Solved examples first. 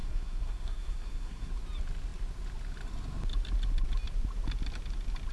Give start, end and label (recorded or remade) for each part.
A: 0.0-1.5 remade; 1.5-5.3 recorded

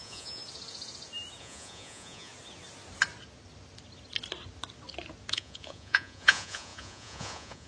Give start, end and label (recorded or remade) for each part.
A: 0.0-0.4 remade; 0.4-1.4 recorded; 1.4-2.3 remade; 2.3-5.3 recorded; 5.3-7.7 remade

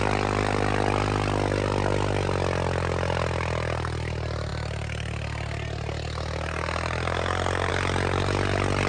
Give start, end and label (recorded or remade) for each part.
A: 0.0-8.9 recorded